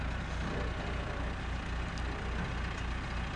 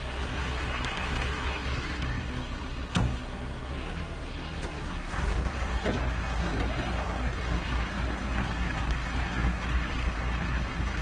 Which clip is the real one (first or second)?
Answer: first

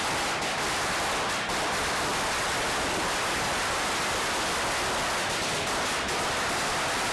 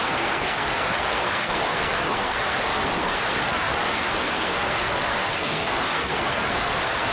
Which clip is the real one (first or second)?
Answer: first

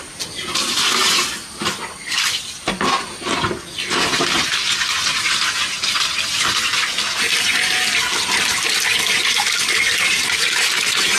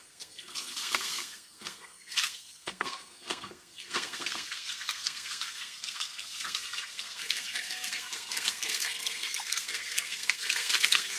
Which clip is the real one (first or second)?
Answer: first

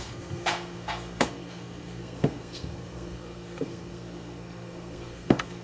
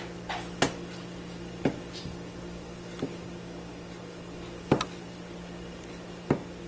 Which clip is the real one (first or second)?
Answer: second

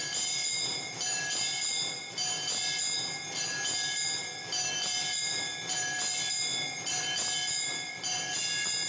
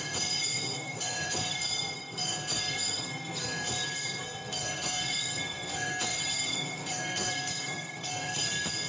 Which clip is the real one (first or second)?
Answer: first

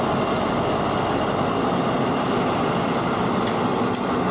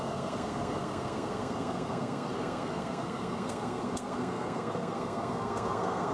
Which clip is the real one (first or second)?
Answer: first